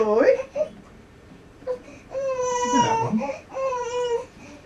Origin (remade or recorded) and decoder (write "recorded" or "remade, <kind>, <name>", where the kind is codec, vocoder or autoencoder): remade, vocoder, BigVGAN v2